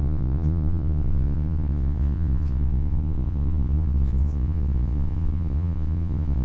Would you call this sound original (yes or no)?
no